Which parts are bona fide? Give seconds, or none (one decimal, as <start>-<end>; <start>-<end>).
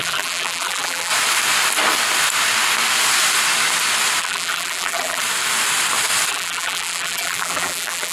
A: 1.1-4.2; 5.2-6.3